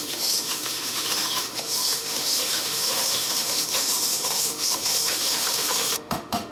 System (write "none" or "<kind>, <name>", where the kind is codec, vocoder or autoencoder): autoencoder, DAC-VAE